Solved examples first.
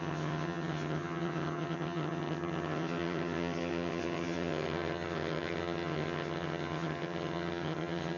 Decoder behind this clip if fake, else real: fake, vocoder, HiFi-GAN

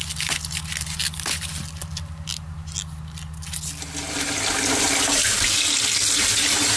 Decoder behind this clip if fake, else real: real